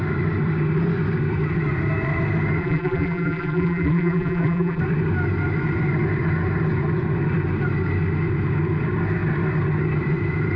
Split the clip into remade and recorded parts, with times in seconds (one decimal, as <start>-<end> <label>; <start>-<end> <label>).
0.0-2.6 recorded; 2.6-4.8 remade; 4.8-10.6 recorded